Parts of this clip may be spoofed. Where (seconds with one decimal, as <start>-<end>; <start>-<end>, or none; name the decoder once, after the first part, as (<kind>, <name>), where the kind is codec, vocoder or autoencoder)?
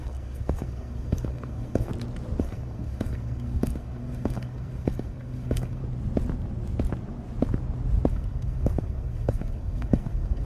0.0-1.9 (codec, SNAC); 2.4-5.8; 8.1-10.4